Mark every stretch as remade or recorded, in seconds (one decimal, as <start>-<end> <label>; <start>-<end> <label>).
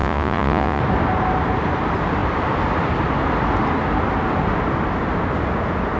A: 0.0-0.8 remade; 0.8-6.0 recorded